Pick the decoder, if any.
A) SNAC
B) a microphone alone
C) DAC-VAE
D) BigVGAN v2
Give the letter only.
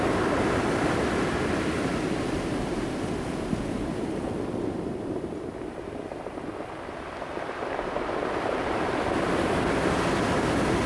B